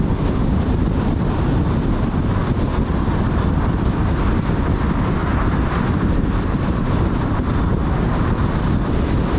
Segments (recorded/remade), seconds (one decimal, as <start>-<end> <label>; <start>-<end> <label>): 0.0-5.2 recorded; 5.2-8.3 remade; 8.3-9.4 recorded